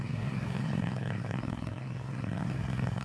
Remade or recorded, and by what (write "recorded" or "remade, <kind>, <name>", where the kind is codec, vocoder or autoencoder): remade, codec, SNAC